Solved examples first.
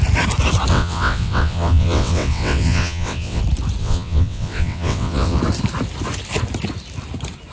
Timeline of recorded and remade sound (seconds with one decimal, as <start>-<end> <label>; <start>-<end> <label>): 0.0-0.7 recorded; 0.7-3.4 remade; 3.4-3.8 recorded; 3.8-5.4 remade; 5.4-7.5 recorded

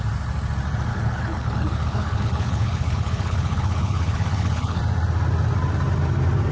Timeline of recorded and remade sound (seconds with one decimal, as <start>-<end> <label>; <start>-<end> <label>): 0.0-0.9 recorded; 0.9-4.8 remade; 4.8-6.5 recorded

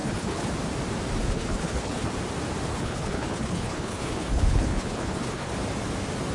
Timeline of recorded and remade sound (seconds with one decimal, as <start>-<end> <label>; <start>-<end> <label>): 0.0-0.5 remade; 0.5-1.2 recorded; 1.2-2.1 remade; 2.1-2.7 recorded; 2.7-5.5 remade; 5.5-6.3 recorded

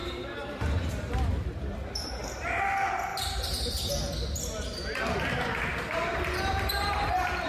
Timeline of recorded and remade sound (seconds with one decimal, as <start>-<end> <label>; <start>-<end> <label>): 0.0-2.6 remade; 2.6-3.1 recorded; 3.1-3.9 remade; 3.9-5.7 recorded; 5.7-7.5 remade

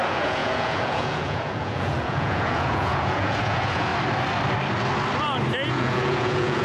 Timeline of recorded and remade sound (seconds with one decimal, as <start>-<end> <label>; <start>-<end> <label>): 0.0-3.9 remade; 3.9-5.7 recorded; 5.7-6.6 remade